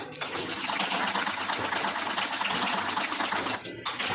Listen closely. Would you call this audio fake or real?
real